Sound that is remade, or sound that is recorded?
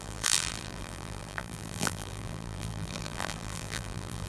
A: remade